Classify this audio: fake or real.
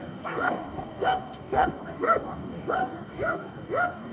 fake